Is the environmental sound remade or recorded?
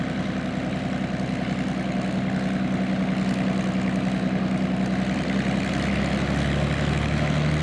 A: recorded